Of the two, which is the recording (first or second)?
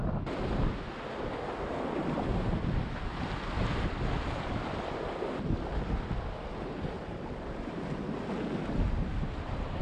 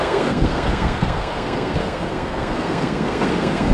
first